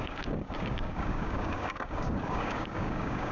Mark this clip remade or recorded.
remade